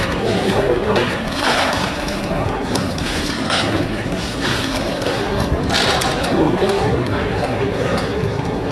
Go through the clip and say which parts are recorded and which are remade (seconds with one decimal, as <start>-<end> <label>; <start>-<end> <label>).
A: 0.0-5.6 remade; 5.6-6.2 recorded; 6.2-8.7 remade